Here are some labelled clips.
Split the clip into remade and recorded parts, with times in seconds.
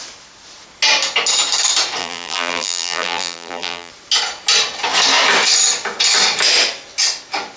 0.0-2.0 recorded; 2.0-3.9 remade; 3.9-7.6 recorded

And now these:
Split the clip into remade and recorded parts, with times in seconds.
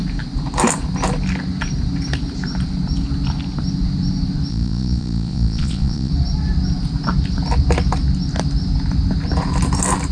0.0-4.5 recorded; 4.5-6.1 remade; 6.1-10.1 recorded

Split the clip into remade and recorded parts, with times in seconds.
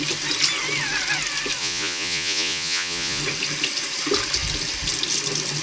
0.0-1.6 recorded; 1.6-3.2 remade; 3.2-5.6 recorded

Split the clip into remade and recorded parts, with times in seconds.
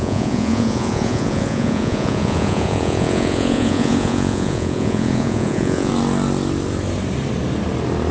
0.0-5.9 remade; 5.9-8.1 recorded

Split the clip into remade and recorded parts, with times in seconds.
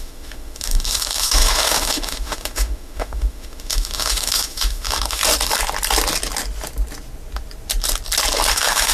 0.0-5.2 remade; 5.2-8.5 recorded; 8.5-8.9 remade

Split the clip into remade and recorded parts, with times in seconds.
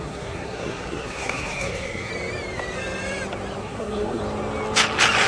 0.0-2.1 remade; 2.1-3.6 recorded; 3.6-4.2 remade; 4.2-5.3 recorded